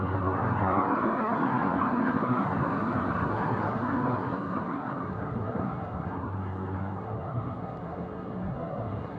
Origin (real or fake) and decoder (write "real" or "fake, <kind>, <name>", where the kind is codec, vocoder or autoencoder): fake, codec, SNAC